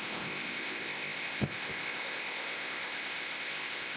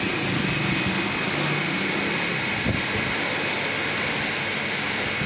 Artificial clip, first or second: first